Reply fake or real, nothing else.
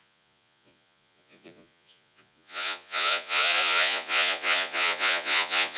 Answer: fake